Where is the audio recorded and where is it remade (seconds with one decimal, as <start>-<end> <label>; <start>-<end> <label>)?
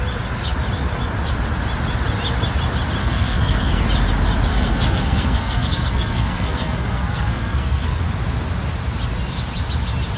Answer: 0.0-3.0 recorded; 3.0-3.8 remade; 3.8-4.5 recorded; 4.5-8.0 remade; 8.0-10.2 recorded